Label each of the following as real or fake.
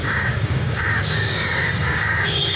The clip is fake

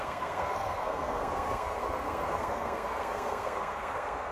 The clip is fake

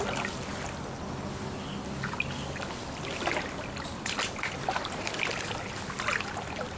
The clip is real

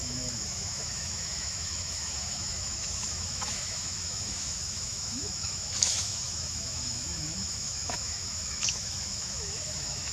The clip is fake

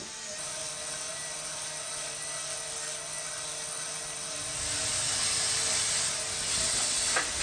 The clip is real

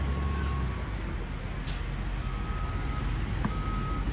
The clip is real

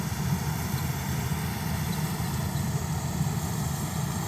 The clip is real